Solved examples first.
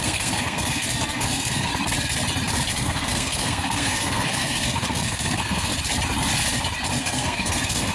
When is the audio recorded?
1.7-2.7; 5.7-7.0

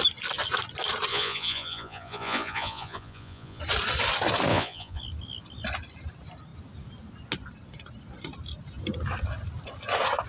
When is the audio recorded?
0.0-1.1; 3.6-4.5; 5.0-10.3

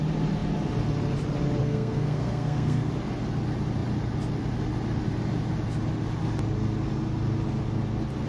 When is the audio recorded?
0.0-1.6; 2.9-8.3

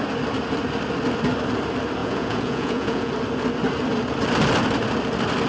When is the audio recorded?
0.0-2.0; 3.1-5.5